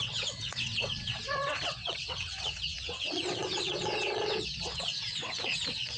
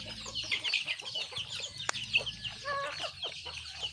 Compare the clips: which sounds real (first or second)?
second